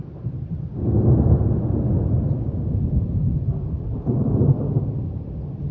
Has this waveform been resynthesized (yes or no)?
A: no